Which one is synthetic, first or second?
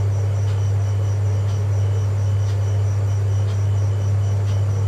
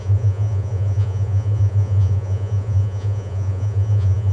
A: second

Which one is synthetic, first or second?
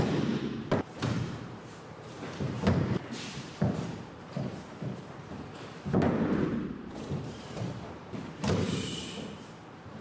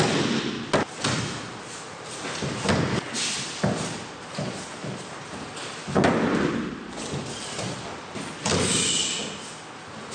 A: first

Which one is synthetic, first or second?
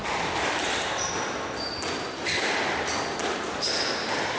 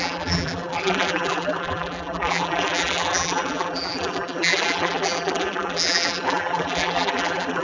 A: second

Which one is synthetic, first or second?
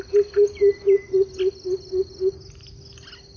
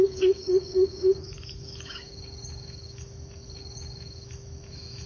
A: second